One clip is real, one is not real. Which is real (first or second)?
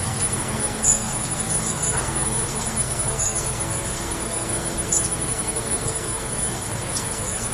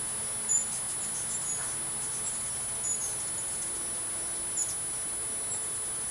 second